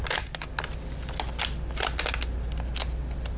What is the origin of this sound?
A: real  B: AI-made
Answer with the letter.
A